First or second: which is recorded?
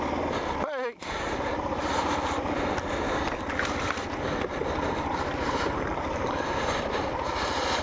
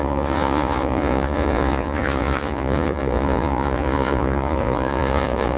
first